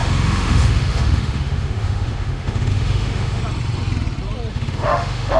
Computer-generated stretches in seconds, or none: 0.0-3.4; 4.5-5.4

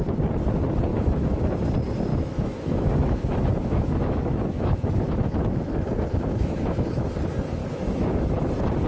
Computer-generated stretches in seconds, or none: 0.9-1.4; 2.1-7.1; 7.6-8.5

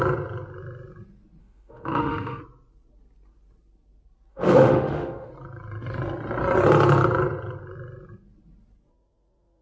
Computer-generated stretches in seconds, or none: 1.4-2.4; 4.3-5.3

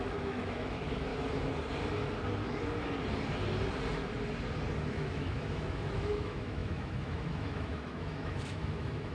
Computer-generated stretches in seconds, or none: 0.0-1.1; 4.9-9.1

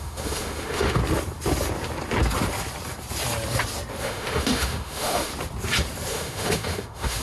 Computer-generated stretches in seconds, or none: 0.0-1.0; 4.0-5.3; 6.1-7.2

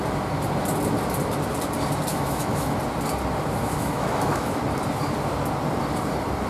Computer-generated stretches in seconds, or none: 2.1-2.8; 3.6-4.6